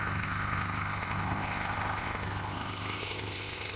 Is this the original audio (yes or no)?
no